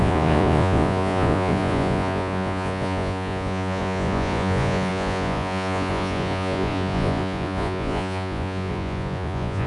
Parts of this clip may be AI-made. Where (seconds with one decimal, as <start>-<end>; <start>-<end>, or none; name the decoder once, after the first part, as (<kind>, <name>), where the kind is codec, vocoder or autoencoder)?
0.0-9.7 (vocoder, Vocos)